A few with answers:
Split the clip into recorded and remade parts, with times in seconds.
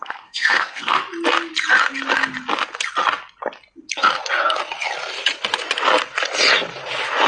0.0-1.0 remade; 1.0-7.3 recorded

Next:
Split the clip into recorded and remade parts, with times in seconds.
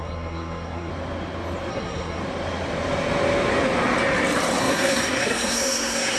0.0-0.9 remade; 0.9-1.7 recorded; 1.7-2.2 remade; 2.2-4.6 recorded; 4.6-6.2 remade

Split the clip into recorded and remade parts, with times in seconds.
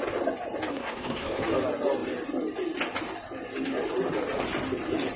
0.0-0.7 recorded; 0.7-1.5 remade; 1.5-5.2 recorded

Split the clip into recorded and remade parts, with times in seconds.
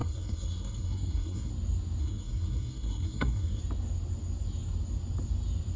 0.0-1.5 remade; 1.5-2.0 recorded; 2.0-3.6 remade; 3.6-5.8 recorded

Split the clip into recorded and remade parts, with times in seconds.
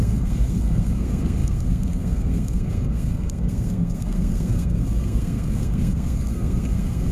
0.0-7.1 remade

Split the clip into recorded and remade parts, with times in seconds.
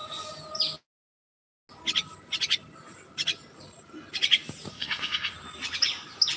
0.0-4.7 recorded; 4.7-5.3 remade; 5.3-6.4 recorded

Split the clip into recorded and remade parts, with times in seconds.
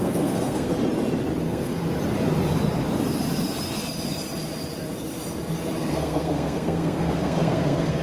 0.0-0.7 remade; 0.7-1.4 recorded; 1.4-1.8 remade; 1.8-5.9 recorded; 5.9-8.0 remade